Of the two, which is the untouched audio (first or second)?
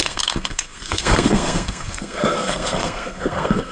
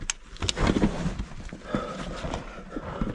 second